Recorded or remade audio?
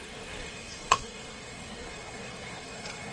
remade